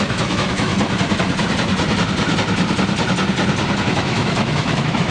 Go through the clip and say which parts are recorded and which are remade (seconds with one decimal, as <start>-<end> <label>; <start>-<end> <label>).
0.0-0.7 remade; 0.7-3.8 recorded; 3.8-5.1 remade